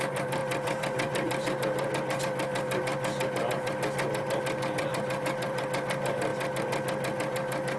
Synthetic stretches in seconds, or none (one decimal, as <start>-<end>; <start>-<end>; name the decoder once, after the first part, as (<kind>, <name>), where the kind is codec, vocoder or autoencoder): 0.0-2.9 (vocoder, BigVGAN v2); 3.5-6.3